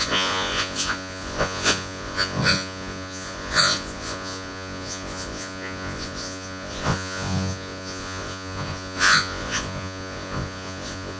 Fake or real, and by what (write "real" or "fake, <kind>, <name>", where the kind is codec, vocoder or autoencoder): fake, vocoder, Vocos